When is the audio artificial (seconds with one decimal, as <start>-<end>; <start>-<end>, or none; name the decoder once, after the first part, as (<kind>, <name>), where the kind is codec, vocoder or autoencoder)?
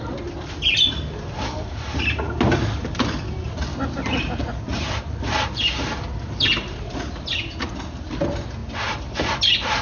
none